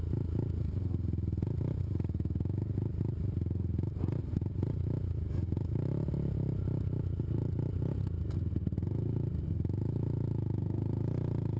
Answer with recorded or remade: recorded